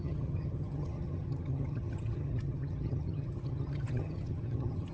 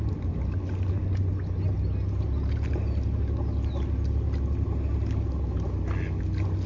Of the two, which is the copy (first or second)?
first